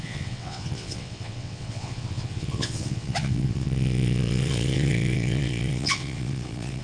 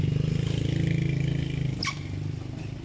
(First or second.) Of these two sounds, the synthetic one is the first